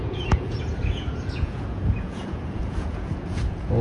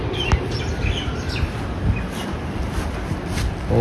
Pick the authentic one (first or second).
second